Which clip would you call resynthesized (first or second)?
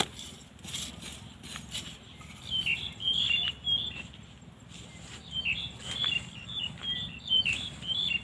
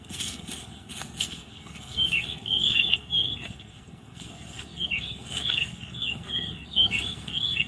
second